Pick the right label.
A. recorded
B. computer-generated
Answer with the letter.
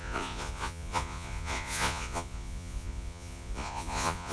B